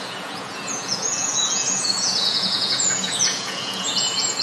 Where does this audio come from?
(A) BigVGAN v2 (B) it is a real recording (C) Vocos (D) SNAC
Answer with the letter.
C